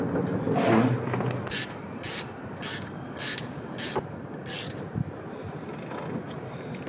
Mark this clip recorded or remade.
recorded